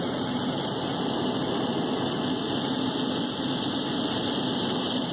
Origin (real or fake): real